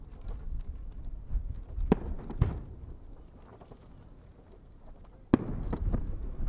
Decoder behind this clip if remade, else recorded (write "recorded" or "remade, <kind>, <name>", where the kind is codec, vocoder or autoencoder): recorded